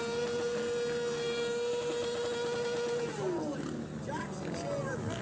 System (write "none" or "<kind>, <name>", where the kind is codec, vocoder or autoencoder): none